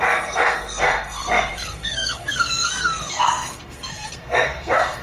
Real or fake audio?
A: fake